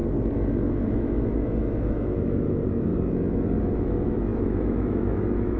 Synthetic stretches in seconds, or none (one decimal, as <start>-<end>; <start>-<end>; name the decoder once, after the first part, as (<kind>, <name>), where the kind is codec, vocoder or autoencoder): 0.7-2.9 (autoencoder, DAC-VAE); 3.6-5.6